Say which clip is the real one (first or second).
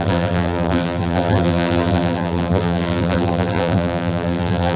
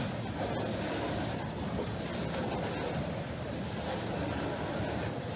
second